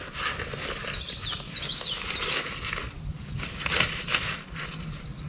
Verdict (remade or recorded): recorded